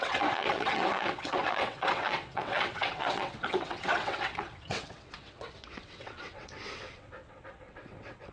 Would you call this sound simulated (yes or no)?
yes